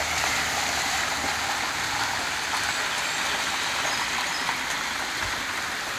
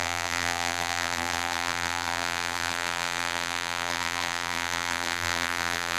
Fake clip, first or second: second